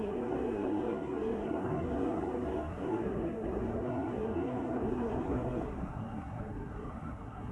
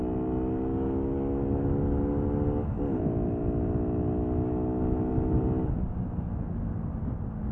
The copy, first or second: first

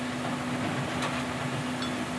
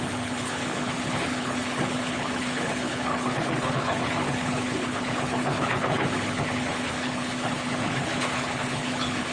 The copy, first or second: second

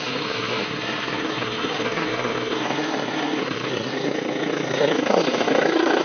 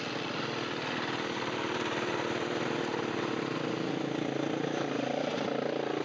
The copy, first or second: first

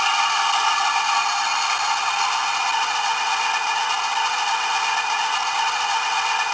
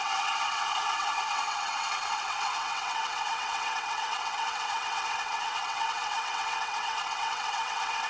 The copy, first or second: second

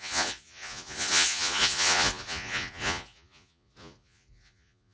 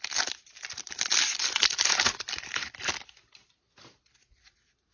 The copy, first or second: first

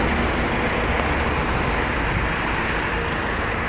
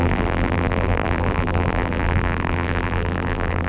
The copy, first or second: second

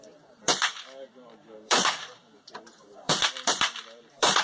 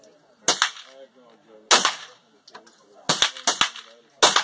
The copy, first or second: first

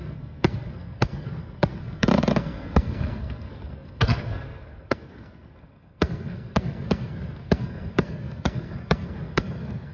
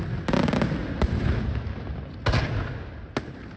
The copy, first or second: first